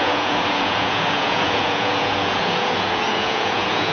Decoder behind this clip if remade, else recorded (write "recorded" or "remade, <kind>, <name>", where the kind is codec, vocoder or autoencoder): remade, vocoder, Vocos